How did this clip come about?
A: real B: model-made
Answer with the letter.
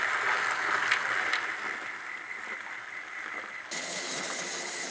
A